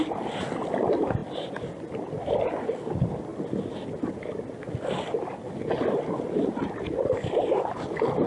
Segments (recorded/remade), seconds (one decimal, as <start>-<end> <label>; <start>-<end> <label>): 0.0-8.3 recorded